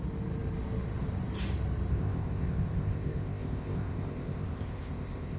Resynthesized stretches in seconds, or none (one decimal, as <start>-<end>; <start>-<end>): 1.9-5.4